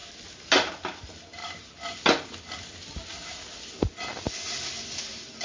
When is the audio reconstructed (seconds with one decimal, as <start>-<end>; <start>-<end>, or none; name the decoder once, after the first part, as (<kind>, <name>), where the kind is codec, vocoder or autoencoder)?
none

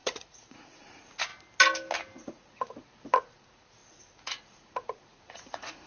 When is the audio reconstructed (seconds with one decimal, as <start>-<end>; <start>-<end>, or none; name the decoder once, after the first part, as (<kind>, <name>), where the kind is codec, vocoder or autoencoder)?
0.0-1.3 (vocoder, Vocos); 2.2-5.9

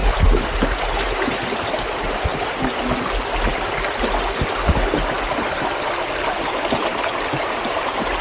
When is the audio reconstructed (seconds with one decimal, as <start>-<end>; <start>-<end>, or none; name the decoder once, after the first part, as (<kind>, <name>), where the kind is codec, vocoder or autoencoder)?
1.8-2.3 (vocoder, BigVGAN v2); 5.5-8.2

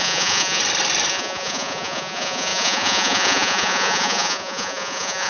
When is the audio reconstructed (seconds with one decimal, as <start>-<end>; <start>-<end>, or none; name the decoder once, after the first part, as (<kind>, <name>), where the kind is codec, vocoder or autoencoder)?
0.0-0.6 (vocoder, Vocos); 1.1-5.3

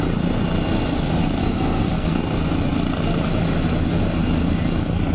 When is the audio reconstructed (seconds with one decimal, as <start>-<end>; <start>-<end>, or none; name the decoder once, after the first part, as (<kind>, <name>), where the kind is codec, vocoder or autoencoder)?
1.4-2.2 (codec, SNAC)